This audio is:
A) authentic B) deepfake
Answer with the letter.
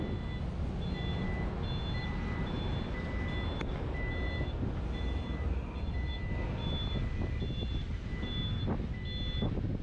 A